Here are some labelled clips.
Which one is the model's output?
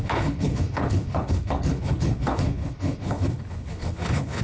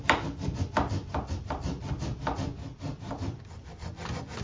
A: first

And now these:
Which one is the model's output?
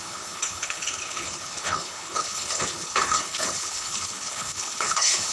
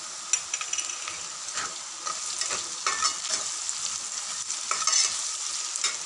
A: first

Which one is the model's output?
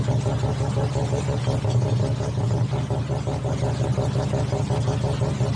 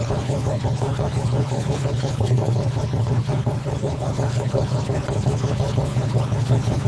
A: second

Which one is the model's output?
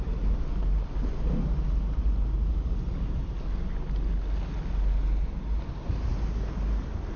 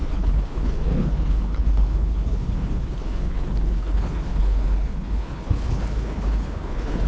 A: second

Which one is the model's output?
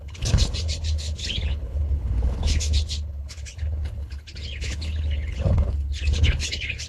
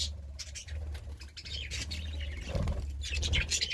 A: first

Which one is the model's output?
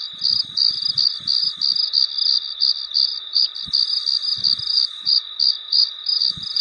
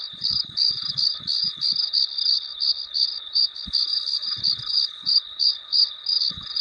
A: second